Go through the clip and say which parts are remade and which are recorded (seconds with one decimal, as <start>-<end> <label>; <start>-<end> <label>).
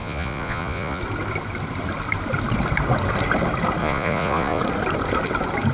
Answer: 0.0-1.0 remade; 1.0-3.8 recorded; 3.8-4.6 remade; 4.6-5.7 recorded